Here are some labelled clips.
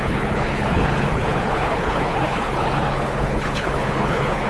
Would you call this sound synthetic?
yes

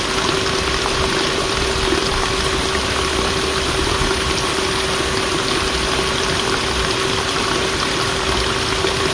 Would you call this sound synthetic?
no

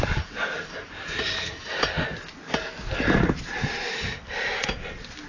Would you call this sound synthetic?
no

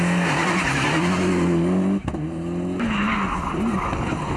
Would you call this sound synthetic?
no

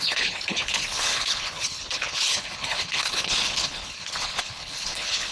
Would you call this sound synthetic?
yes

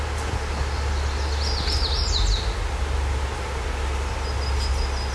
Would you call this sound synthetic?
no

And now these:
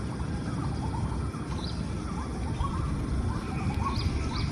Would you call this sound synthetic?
no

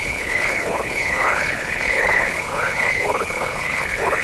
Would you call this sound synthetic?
yes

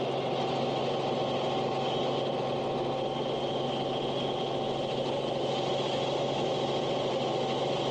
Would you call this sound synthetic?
no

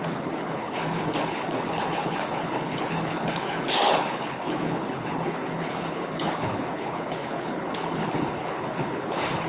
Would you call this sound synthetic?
yes